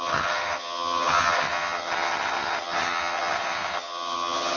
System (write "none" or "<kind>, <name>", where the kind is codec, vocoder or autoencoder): vocoder, HiFi-GAN